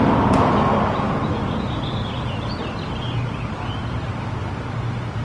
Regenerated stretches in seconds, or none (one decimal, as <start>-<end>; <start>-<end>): none

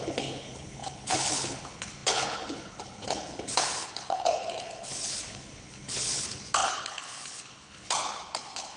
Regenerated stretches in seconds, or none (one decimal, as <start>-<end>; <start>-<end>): 0.0-8.8

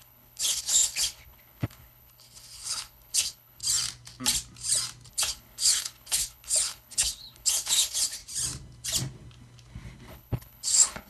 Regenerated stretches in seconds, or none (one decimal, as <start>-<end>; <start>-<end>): 0.0-3.6; 5.1-8.2; 10.1-11.1

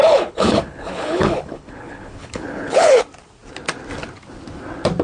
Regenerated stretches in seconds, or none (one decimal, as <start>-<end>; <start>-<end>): 0.0-3.0

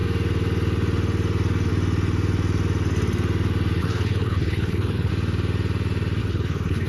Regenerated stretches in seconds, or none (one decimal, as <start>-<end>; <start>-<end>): 3.8-5.1; 6.2-6.9

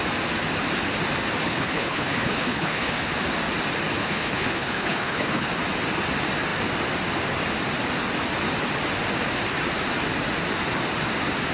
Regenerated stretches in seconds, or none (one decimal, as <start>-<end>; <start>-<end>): 1.4-3.1; 4.0-5.5